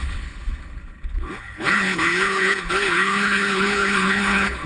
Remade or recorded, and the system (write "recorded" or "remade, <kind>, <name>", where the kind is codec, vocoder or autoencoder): remade, codec, HILCodec